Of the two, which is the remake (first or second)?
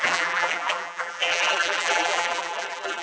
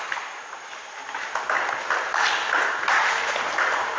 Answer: first